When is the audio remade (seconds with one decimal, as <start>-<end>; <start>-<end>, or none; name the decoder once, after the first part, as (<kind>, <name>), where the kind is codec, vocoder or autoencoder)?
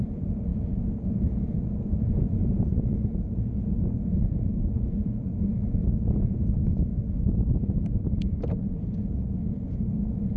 0.0-6.9 (vocoder, Vocos); 7.4-10.4